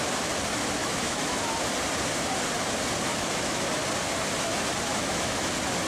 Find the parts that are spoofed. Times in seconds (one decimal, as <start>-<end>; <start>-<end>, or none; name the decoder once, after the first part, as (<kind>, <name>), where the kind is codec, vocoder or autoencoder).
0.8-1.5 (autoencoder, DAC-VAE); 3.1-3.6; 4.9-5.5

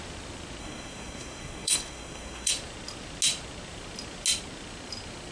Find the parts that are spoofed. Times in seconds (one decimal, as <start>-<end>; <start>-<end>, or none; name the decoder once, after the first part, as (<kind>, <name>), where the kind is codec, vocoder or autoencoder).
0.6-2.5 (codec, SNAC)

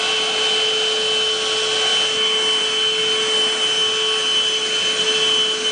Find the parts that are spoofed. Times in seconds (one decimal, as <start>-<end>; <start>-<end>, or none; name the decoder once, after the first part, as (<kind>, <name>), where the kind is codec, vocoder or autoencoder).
none